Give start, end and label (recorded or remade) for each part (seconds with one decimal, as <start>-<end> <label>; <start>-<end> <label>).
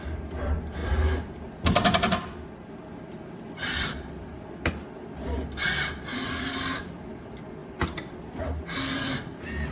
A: 0.0-0.8 recorded; 0.8-4.4 remade; 4.4-6.1 recorded; 6.1-7.0 remade; 7.0-7.6 recorded; 7.6-8.4 remade; 8.4-9.7 recorded